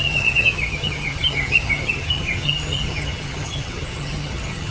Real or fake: fake